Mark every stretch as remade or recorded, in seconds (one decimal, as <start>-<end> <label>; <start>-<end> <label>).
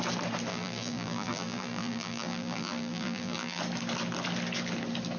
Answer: 0.0-0.5 recorded; 0.5-3.6 remade; 3.6-5.2 recorded